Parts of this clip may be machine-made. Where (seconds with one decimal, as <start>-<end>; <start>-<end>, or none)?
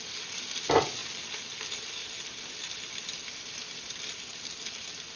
none